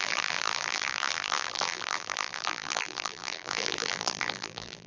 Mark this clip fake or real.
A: fake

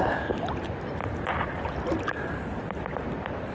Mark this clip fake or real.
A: real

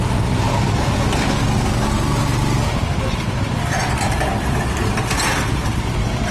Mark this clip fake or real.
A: real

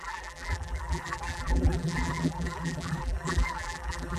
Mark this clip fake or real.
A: fake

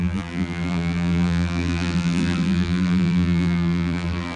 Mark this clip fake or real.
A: fake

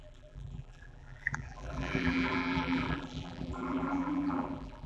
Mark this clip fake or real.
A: fake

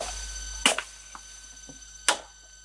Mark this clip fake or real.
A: real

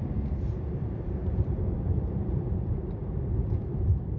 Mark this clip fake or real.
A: fake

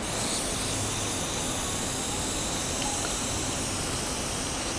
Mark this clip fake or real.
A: real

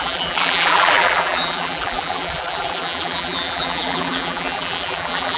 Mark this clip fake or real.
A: fake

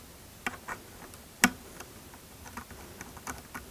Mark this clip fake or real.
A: real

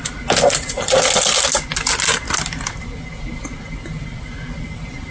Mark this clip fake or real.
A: real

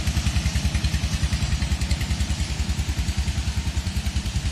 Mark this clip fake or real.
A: fake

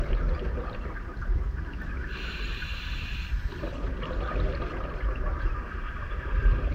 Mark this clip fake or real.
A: fake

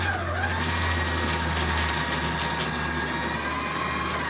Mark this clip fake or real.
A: real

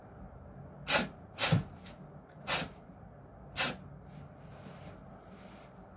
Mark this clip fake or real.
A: real